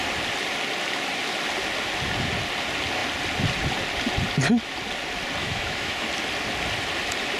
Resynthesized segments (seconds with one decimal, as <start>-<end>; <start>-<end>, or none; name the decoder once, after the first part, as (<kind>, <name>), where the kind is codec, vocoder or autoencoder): 5.4-6.1 (autoencoder, DAC-VAE)